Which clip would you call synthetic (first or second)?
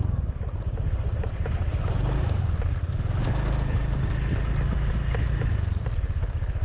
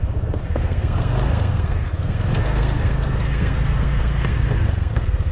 second